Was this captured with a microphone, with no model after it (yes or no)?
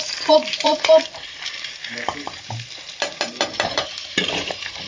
no